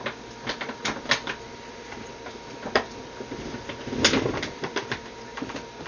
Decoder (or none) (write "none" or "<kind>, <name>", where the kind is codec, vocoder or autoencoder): none